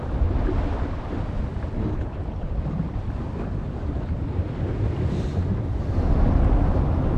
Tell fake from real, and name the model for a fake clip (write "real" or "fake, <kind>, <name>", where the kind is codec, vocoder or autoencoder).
real